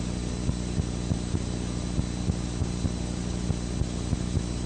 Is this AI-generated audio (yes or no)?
no